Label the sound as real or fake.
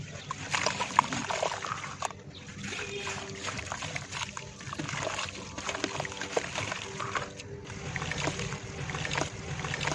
real